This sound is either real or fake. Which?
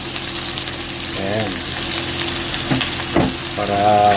real